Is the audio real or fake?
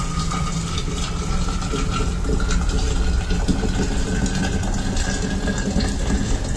real